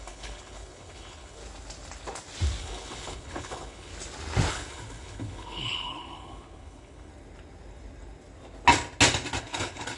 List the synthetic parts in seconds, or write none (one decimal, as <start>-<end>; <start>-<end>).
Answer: 0.0-1.4; 2.6-3.9; 4.5-7.1; 9.4-10.0